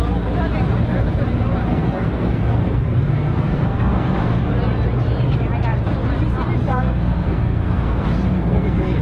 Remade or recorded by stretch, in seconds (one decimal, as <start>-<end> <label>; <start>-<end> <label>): 0.0-1.7 recorded; 1.7-4.4 remade; 4.4-6.7 recorded; 6.7-9.0 remade